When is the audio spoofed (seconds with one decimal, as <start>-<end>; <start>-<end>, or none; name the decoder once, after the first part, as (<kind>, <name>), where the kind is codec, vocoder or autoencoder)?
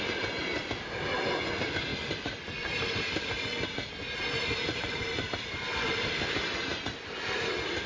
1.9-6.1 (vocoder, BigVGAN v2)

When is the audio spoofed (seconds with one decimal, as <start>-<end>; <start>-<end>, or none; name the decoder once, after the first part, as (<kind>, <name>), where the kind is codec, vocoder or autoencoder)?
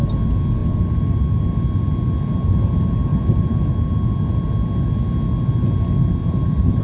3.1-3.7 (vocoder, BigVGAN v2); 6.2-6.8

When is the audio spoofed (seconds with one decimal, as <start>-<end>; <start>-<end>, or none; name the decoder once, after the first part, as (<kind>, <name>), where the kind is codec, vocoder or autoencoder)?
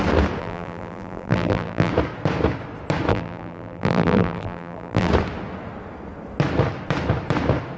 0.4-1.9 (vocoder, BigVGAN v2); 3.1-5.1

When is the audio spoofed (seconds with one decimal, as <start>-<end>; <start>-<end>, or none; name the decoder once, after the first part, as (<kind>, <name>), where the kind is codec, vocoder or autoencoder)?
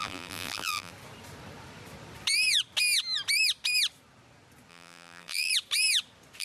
0.0-0.9 (vocoder, BigVGAN v2); 4.7-5.5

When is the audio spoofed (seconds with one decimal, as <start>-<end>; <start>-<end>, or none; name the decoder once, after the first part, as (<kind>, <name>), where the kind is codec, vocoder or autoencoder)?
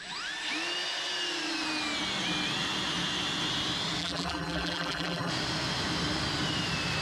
4.0-5.3 (vocoder, BigVGAN v2)